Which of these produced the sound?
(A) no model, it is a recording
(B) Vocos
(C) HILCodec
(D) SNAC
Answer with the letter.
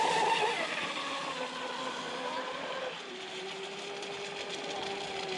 A